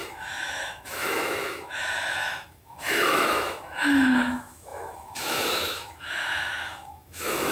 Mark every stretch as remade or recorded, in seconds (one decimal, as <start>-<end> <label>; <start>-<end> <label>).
0.0-7.5 remade